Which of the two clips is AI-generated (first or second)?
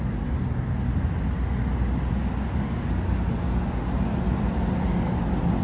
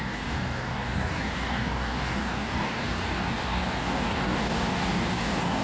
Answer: second